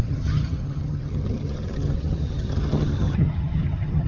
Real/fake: fake